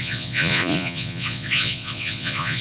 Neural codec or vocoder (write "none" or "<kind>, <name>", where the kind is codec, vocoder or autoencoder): vocoder, Vocos